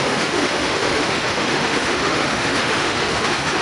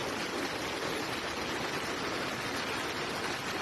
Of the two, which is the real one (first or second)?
second